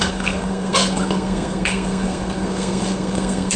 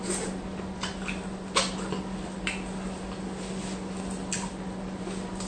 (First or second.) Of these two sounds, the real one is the second